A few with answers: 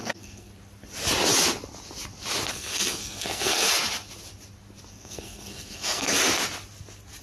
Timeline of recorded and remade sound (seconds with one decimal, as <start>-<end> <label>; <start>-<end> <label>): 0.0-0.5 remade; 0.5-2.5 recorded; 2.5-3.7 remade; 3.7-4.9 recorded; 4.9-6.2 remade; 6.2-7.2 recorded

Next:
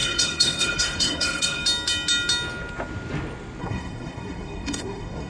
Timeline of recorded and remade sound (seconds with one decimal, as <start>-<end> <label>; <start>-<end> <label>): 0.0-1.6 remade; 1.6-3.6 recorded; 3.6-5.3 remade

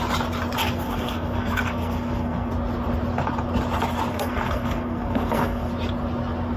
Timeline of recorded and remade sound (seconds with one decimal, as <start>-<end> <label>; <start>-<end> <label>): 0.0-0.6 recorded; 0.6-2.5 remade; 2.5-4.1 recorded; 4.1-5.7 remade; 5.7-6.6 recorded

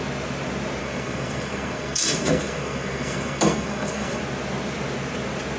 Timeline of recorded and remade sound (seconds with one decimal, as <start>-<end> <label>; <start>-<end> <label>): 0.0-0.8 recorded; 0.8-4.2 remade; 4.2-5.6 recorded

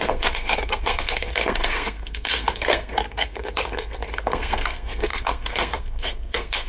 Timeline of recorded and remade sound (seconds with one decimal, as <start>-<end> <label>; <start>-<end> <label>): 0.0-6.7 remade

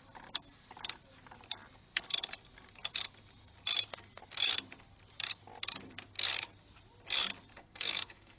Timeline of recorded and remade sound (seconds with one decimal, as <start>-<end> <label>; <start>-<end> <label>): 0.0-7.6 recorded; 7.6-8.4 remade

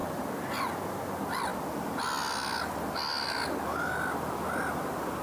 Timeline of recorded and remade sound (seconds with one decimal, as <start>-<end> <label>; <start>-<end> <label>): 0.0-5.2 recorded